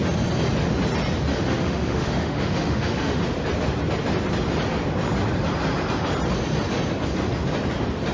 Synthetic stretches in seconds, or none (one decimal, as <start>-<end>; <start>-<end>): 1.3-3.2